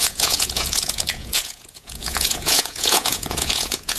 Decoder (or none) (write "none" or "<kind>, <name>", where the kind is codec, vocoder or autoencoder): vocoder, Vocos